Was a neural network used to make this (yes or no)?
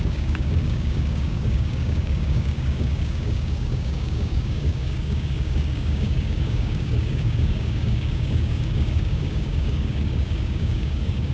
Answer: yes